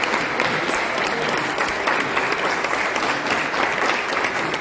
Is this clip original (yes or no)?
yes